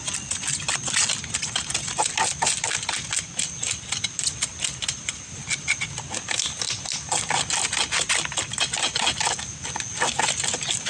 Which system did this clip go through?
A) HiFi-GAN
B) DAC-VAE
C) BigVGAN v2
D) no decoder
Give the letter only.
D